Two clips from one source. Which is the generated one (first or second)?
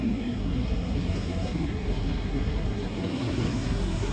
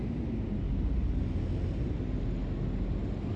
first